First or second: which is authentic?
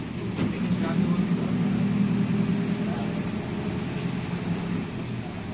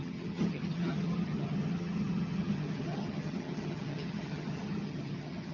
first